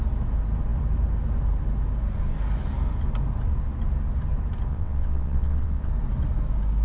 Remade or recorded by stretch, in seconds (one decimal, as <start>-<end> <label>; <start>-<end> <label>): 0.0-4.7 recorded; 4.7-5.9 remade; 5.9-6.8 recorded